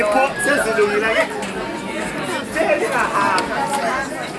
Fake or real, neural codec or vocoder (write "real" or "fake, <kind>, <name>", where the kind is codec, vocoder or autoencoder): real